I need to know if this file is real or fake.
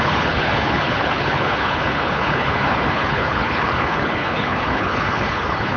fake